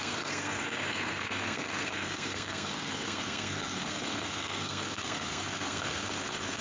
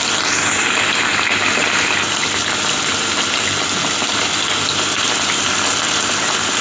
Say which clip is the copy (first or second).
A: first